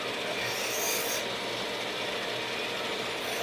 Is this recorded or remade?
recorded